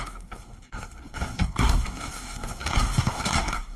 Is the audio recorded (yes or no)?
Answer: no